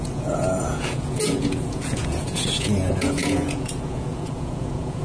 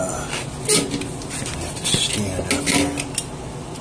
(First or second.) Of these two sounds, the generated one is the first